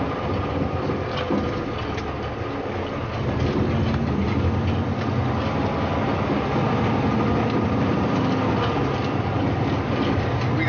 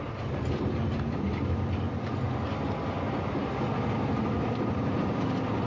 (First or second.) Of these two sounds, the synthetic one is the second